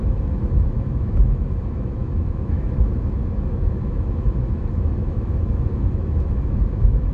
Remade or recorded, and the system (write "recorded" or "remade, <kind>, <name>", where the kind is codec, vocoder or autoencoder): remade, autoencoder, DAC-VAE